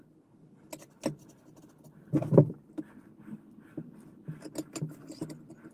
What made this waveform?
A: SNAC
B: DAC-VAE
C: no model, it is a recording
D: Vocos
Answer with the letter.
C